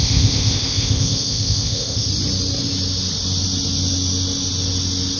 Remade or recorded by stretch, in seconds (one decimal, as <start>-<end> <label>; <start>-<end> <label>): 0.0-2.1 remade; 2.1-5.2 recorded